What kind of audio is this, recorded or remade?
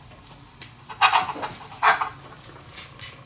recorded